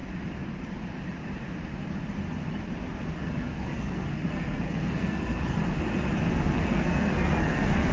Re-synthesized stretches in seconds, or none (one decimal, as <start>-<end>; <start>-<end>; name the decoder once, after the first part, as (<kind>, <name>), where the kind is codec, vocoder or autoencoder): 3.2-5.6 (codec, SNAC); 6.3-7.9